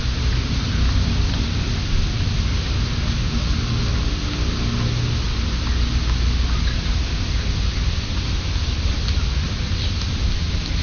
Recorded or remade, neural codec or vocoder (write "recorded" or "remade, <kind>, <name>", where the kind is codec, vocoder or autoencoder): recorded